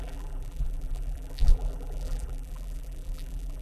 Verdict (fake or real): fake